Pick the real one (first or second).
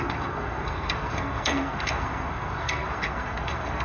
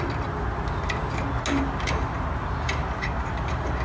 second